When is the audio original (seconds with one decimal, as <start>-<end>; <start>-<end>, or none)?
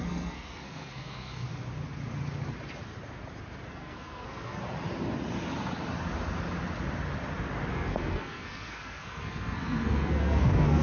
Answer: 1.5-3.7; 4.6-7.7